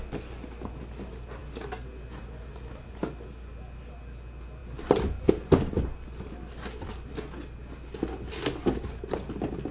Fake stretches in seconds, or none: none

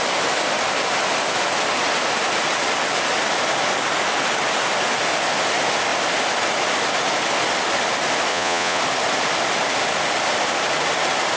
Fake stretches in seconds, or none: 8.3-8.8 (vocoder, Vocos)

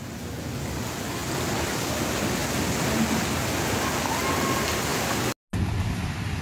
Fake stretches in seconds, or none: 1.2-1.9 (vocoder, BigVGAN v2)

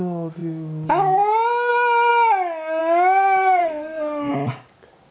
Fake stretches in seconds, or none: 3.6-4.3 (codec, SNAC)